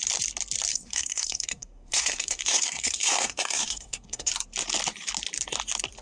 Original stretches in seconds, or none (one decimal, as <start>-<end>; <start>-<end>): 0.0-0.7; 4.3-6.0